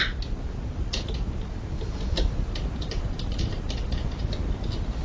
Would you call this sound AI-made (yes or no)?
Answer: no